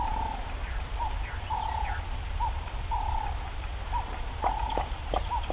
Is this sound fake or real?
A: real